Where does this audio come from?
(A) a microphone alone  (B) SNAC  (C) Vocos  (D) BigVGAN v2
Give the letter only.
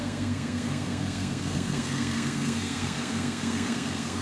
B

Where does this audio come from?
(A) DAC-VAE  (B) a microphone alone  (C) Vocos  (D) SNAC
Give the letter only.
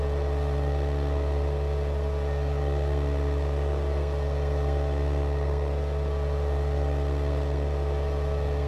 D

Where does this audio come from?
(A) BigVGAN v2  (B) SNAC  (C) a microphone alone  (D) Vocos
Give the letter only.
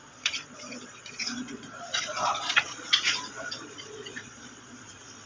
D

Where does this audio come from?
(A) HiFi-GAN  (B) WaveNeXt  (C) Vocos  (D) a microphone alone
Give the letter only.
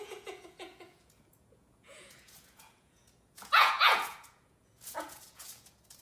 C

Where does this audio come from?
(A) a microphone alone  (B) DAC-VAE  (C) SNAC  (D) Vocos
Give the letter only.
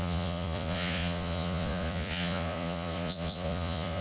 D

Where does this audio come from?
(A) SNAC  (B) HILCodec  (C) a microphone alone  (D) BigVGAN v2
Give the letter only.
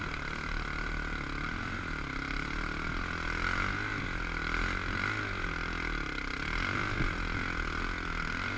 C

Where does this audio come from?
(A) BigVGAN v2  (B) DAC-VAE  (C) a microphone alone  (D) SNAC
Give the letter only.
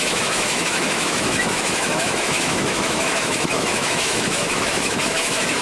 B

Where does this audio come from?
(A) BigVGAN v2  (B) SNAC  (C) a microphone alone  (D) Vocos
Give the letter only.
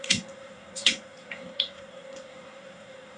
B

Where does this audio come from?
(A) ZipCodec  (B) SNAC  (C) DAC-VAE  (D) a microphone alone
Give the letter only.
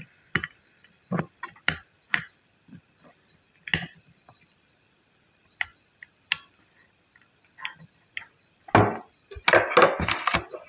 D